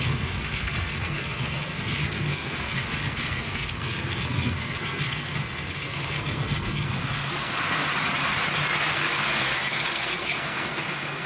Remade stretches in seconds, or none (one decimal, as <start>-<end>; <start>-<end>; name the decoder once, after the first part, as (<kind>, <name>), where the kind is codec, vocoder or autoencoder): 0.0-7.8 (codec, SNAC); 8.9-11.3